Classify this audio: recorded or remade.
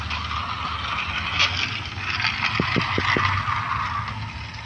recorded